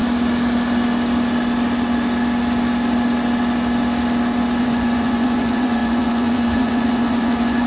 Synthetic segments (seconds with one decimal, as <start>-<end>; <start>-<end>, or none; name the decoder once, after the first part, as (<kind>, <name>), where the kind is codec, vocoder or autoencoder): 4.6-7.7 (vocoder, Vocos)